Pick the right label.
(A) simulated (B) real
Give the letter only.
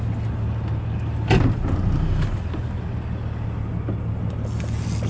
B